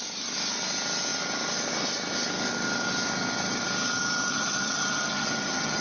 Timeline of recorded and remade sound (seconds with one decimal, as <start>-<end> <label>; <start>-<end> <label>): 0.0-4.3 recorded; 4.3-5.8 remade